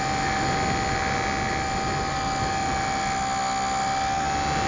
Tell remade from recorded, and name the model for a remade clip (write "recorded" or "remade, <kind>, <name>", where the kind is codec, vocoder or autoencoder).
recorded